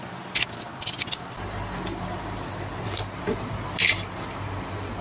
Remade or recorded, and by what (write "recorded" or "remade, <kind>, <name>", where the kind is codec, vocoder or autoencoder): recorded